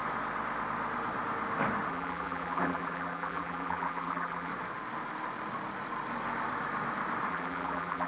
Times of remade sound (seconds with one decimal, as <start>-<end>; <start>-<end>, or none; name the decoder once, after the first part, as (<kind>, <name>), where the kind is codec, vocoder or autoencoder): 1.9-4.5 (vocoder, BigVGAN v2); 7.3-8.1